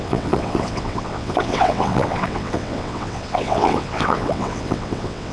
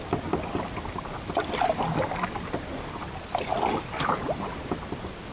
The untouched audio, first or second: second